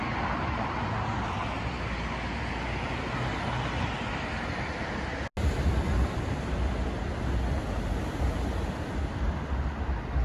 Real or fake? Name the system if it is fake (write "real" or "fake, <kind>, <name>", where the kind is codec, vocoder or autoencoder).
real